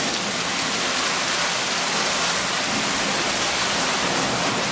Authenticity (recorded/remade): recorded